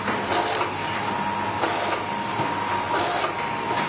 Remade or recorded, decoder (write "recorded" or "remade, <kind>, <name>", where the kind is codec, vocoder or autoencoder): recorded